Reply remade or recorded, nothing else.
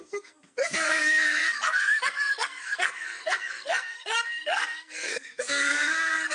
remade